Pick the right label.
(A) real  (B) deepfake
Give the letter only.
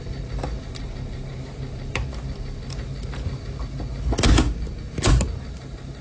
A